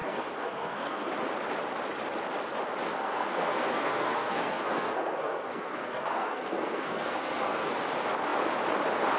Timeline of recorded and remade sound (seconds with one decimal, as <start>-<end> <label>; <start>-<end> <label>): 0.0-1.1 remade; 1.1-2.9 recorded; 2.9-7.7 remade; 7.7-9.2 recorded